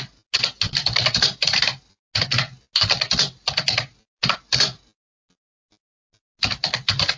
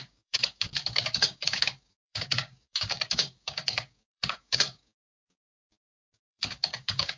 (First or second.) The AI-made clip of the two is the second